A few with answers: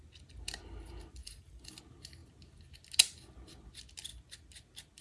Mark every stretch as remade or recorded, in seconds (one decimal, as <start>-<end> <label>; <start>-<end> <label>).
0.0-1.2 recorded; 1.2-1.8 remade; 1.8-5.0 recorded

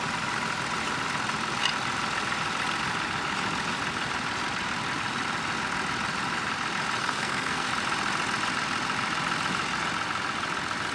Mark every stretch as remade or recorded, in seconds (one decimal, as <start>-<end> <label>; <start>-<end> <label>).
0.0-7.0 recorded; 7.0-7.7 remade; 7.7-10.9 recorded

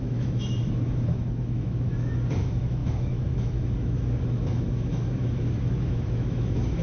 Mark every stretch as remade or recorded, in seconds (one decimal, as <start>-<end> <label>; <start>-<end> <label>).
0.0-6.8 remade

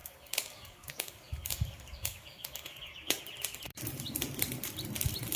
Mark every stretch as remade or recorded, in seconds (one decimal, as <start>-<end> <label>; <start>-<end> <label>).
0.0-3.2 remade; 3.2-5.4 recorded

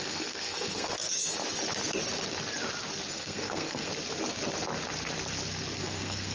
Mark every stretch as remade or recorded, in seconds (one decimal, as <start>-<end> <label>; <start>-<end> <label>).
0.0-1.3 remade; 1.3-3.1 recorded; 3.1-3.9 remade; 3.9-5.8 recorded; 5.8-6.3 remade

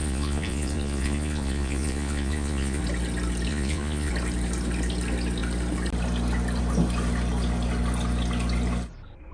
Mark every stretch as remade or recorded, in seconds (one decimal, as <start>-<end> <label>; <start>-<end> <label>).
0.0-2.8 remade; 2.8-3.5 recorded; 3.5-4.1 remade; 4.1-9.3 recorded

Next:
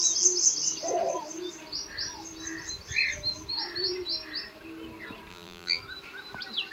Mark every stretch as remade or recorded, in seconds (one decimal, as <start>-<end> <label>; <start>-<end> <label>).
0.0-5.3 recorded; 5.3-5.8 remade; 5.8-6.7 recorded